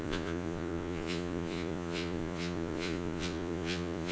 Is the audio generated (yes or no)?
yes